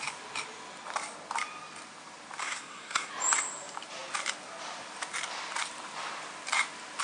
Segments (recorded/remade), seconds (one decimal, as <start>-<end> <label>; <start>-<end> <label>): 0.0-2.4 recorded; 2.4-3.1 remade; 3.1-7.0 recorded